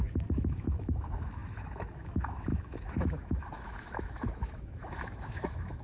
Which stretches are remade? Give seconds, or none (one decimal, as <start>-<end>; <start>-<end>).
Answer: 0.0-5.8